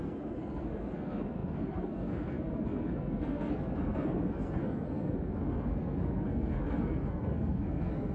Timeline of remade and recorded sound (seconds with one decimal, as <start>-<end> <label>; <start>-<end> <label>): 0.0-8.1 remade